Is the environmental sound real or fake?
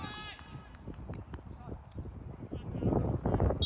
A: real